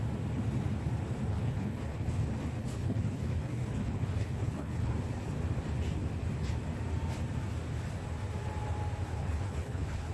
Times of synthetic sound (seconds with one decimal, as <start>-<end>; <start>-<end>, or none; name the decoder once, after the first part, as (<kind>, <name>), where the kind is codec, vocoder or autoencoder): 1.3-2.2 (codec, HILCodec); 2.6-4.9; 9.1-10.1